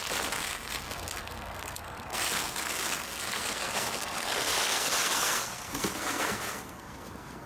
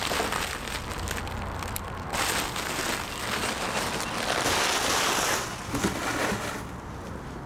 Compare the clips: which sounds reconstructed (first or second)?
first